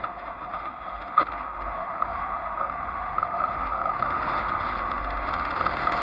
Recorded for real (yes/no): no